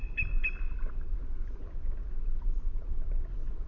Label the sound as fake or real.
real